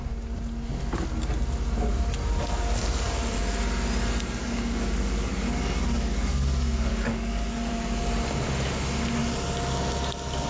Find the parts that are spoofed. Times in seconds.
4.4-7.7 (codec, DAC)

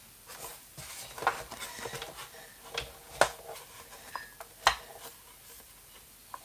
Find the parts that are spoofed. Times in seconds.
none